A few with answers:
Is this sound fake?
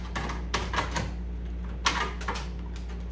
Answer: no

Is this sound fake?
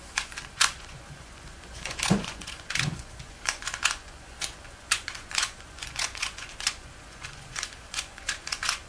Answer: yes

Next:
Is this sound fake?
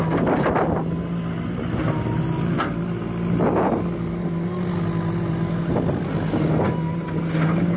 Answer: no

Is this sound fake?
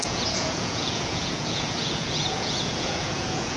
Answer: yes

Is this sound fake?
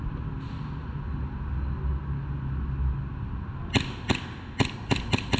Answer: no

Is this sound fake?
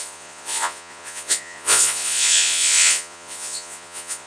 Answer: yes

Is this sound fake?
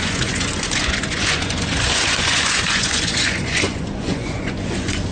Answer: yes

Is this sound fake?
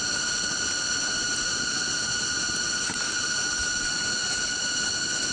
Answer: no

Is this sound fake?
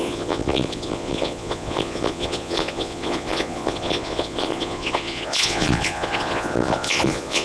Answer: yes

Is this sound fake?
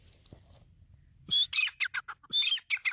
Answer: no